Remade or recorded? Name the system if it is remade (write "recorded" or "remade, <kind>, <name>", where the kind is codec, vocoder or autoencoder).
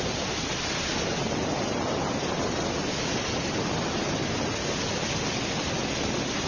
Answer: recorded